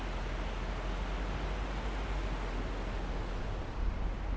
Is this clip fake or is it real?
real